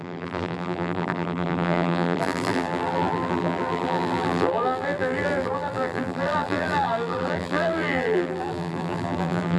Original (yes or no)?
no